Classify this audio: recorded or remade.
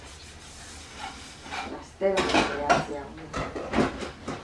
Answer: recorded